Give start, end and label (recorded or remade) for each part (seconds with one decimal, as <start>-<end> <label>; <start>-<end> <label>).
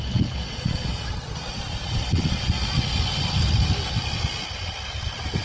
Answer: 0.0-2.6 remade; 2.6-5.4 recorded